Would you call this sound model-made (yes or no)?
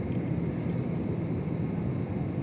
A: no